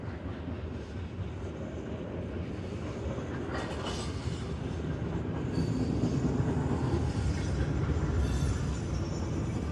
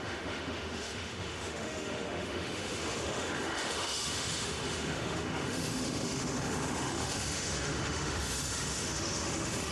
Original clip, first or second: first